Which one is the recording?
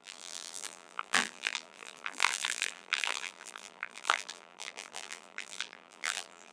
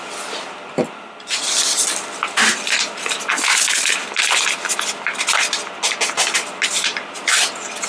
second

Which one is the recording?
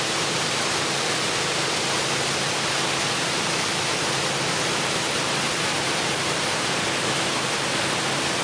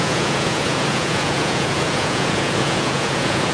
first